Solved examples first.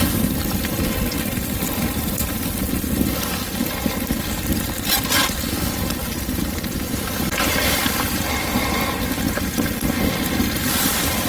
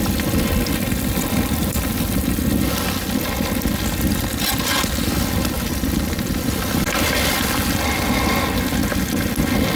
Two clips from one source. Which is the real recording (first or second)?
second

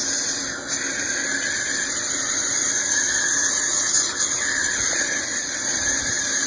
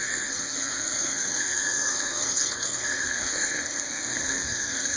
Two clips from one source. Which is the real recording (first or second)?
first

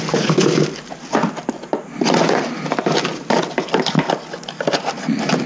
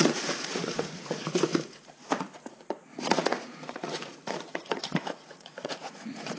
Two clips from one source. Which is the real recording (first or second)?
first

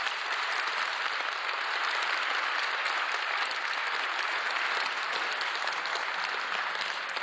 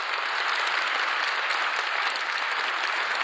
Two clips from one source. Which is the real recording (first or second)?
second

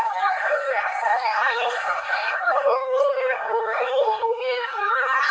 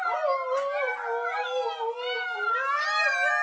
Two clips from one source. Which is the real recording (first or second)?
second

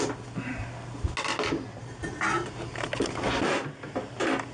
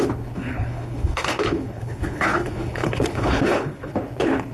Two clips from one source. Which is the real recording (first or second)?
first